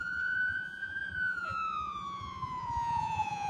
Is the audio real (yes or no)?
no